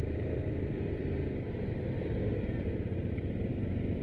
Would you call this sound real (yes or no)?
no